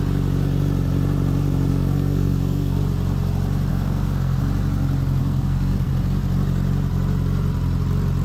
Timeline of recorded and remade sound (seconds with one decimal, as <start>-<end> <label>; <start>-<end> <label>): 0.0-1.7 recorded; 1.7-2.8 remade; 2.8-3.7 recorded; 3.7-4.4 remade; 4.4-5.2 recorded; 5.2-5.9 remade; 5.9-8.2 recorded